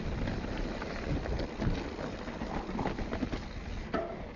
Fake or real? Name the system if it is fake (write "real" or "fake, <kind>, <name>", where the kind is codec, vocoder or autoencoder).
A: real